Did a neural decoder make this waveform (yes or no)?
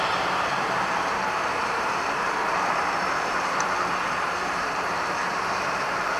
yes